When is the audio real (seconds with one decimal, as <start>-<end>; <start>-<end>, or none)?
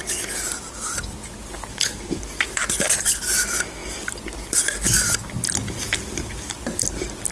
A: 0.0-1.7; 2.2-7.3